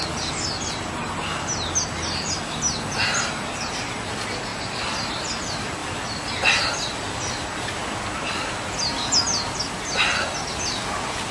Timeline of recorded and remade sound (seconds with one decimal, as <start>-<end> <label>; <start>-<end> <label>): 0.0-11.3 recorded